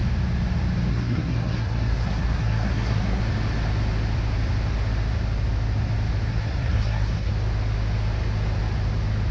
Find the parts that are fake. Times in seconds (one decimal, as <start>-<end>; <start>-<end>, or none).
0.9-3.2; 6.3-7.3